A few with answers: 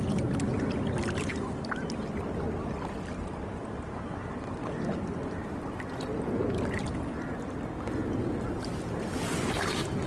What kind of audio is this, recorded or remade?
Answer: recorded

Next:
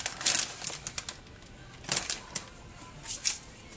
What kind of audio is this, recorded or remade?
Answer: recorded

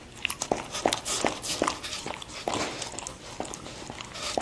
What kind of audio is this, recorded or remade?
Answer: recorded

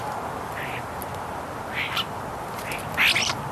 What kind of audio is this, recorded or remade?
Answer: recorded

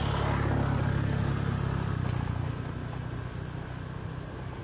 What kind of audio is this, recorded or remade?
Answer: recorded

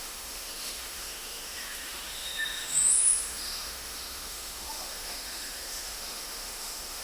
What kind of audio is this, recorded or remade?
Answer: remade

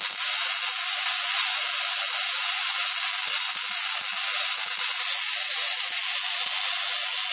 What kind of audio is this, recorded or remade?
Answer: recorded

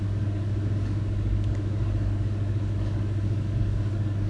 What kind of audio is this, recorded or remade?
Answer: remade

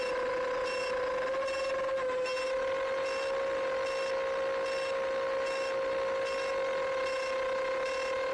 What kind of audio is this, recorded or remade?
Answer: recorded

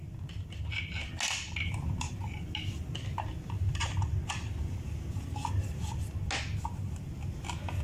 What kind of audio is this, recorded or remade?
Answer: recorded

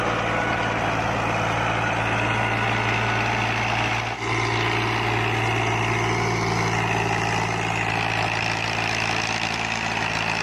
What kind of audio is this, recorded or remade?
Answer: recorded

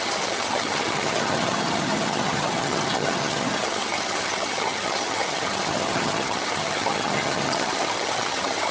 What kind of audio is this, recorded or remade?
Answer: remade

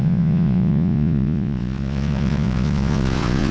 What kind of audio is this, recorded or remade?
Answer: remade